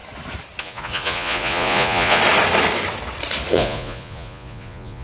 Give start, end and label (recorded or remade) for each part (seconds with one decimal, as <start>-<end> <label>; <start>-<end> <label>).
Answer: 0.0-0.6 recorded; 0.6-2.2 remade; 2.2-3.5 recorded; 3.5-5.0 remade